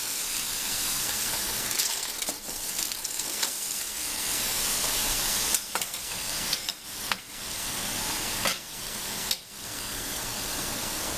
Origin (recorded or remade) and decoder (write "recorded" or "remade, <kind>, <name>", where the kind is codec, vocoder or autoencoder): remade, codec, SNAC